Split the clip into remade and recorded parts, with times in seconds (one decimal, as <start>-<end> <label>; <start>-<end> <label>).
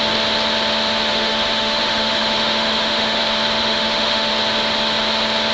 0.0-1.1 recorded; 1.1-3.2 remade; 3.2-3.6 recorded; 3.6-4.3 remade; 4.3-5.5 recorded